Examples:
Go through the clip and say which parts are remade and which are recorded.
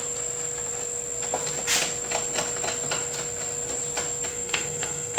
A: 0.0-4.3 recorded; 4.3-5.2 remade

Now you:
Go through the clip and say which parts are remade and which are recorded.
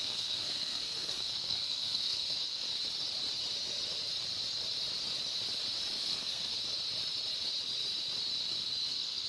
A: 0.0-2.7 remade; 2.7-6.0 recorded; 6.0-6.5 remade; 6.5-8.9 recorded; 8.9-9.3 remade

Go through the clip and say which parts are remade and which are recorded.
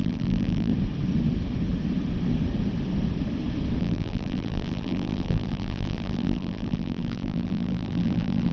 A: 0.0-0.7 remade; 0.7-3.8 recorded; 3.8-8.5 remade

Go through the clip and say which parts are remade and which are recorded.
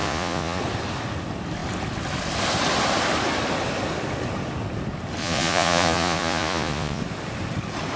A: 0.0-0.6 remade; 0.6-5.2 recorded; 5.2-7.0 remade; 7.0-8.0 recorded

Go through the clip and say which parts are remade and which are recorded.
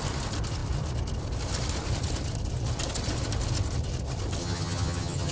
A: 0.0-4.4 recorded; 4.4-5.3 remade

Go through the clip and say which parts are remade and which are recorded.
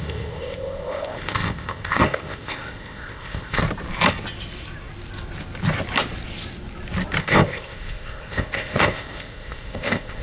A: 0.0-3.6 remade; 3.6-7.2 recorded; 7.2-10.2 remade